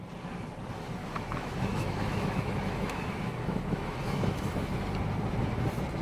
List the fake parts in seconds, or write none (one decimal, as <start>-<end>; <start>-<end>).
1.0-4.6